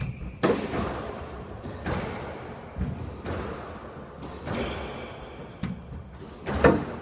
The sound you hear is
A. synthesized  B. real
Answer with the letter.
B